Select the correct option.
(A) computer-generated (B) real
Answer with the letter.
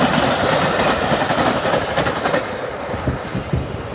B